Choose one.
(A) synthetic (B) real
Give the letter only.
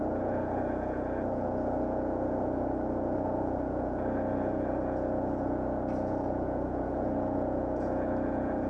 A